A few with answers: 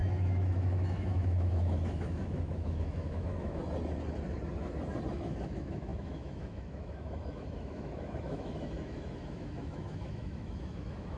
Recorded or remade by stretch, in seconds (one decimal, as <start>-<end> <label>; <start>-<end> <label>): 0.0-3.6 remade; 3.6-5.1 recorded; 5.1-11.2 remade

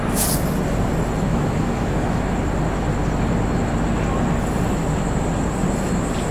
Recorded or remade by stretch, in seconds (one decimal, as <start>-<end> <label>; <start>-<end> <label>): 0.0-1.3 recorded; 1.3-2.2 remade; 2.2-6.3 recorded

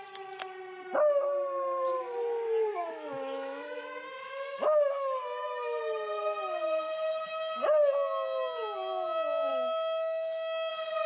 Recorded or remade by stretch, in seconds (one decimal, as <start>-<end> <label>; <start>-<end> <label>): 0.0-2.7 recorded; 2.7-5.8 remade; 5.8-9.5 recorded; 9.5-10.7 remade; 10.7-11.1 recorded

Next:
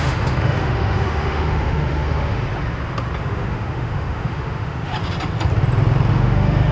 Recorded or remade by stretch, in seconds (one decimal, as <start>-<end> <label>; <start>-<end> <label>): 0.0-2.4 remade; 2.4-3.2 recorded; 3.2-4.9 remade; 4.9-6.1 recorded; 6.1-6.7 remade